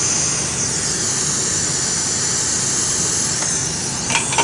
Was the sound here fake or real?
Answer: real